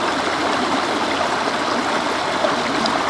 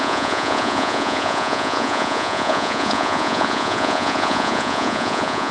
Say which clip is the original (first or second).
first